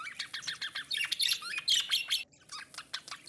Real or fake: real